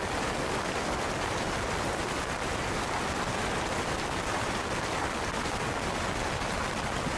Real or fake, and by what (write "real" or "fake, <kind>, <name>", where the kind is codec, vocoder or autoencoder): real